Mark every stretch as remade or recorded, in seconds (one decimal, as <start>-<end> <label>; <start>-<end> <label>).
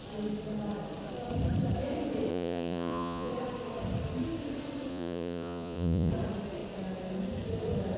0.0-2.3 recorded; 2.3-3.3 remade; 3.3-4.9 recorded; 4.9-6.1 remade; 6.1-8.0 recorded